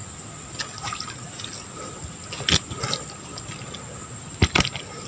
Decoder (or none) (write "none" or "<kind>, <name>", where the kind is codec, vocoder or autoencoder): none